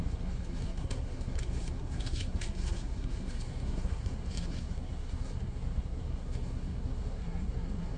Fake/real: fake